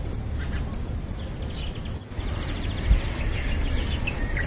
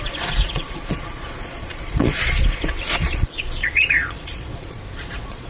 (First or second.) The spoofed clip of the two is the second